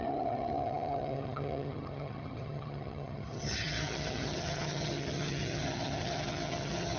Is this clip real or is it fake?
fake